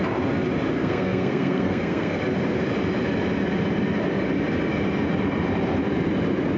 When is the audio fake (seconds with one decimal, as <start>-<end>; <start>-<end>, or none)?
0.7-2.2